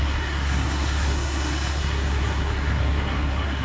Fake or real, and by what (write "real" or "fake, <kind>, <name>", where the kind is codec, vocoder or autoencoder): fake, codec, SNAC